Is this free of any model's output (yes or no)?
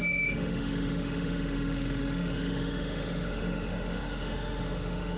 no